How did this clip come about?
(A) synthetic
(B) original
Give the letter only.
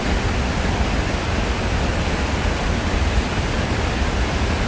B